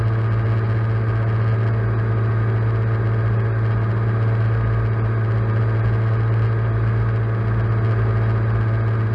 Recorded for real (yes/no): yes